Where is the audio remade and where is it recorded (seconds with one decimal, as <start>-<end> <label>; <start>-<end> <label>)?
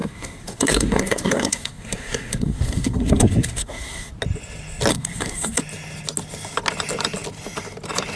0.0-4.1 remade; 4.1-4.9 recorded; 4.9-5.6 remade; 5.6-8.2 recorded